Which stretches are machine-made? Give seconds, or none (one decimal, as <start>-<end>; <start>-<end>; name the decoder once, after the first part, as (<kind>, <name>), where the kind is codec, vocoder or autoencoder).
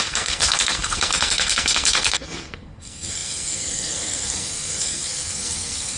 0.0-6.0 (codec, SNAC)